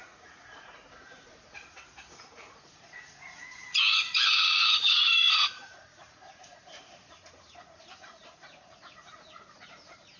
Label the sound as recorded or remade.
remade